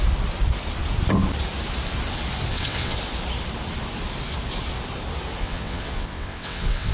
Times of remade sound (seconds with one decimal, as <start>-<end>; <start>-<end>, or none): 2.5-3.0; 5.4-6.9